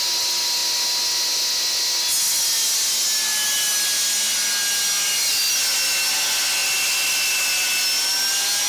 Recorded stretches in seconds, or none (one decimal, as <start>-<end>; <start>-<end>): 0.0-8.7